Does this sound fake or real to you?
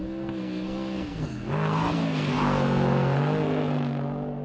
fake